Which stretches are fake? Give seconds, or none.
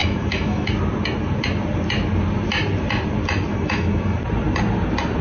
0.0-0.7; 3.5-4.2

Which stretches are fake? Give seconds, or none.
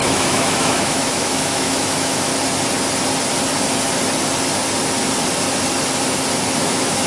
0.0-2.3; 6.6-7.1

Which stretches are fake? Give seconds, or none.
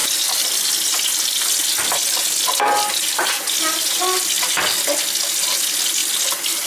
none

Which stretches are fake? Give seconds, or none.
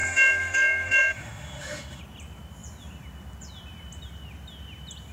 0.0-2.0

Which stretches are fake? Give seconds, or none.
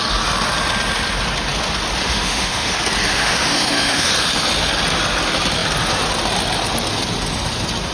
2.0-2.7; 3.1-4.1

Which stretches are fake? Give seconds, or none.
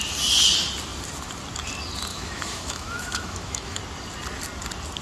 2.1-3.8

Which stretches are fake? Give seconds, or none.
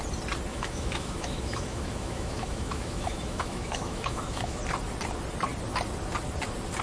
0.5-4.6